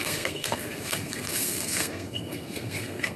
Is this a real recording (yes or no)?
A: no